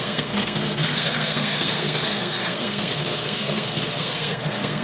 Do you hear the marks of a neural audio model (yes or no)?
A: yes